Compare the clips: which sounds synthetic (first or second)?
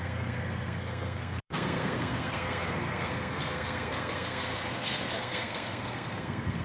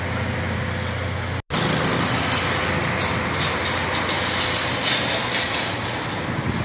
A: first